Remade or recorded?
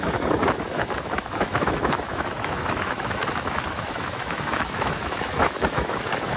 remade